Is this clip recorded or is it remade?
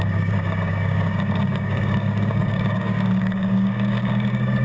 remade